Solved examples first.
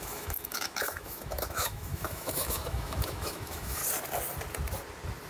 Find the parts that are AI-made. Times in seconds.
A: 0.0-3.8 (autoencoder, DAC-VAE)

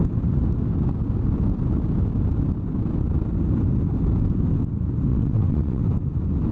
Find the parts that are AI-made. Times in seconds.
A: 5.1-5.8 (vocoder, WaveNeXt)